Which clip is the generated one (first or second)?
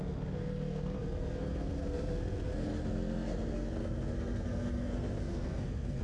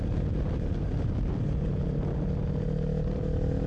first